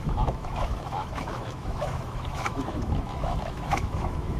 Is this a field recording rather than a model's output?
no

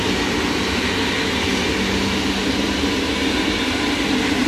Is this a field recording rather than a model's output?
yes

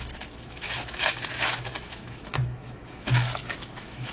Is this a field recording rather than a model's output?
no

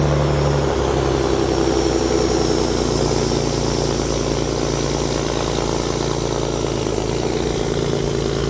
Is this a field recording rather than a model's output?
yes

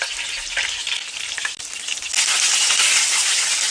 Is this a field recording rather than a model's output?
yes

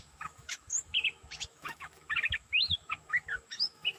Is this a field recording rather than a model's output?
no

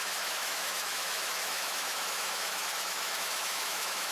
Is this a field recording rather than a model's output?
no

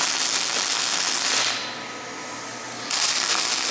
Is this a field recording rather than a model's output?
yes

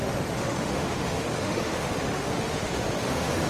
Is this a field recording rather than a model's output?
no